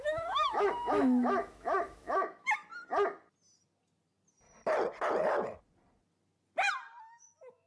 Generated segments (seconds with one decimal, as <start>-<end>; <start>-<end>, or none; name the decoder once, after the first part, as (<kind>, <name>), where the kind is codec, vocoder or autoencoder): 0.0-2.7 (autoencoder, DAC-VAE); 7.0-7.7